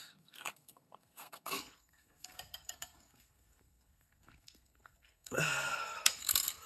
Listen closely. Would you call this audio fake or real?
fake